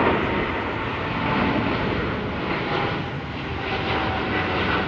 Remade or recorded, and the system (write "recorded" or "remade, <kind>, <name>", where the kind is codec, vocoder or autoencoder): recorded